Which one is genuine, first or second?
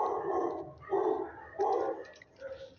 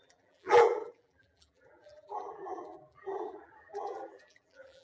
first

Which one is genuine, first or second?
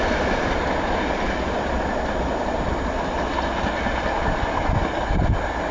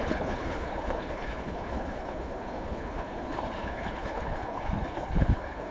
first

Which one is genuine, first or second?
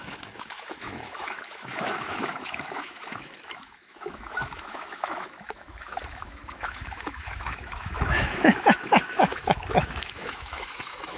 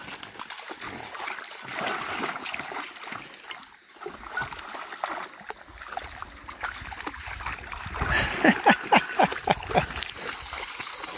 second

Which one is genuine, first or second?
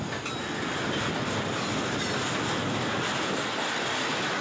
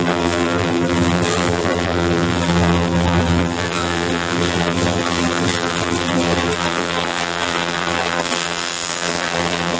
first